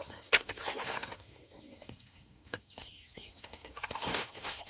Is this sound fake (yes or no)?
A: yes